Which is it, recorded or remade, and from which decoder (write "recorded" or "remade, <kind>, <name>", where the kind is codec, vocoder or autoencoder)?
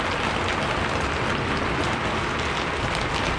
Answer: recorded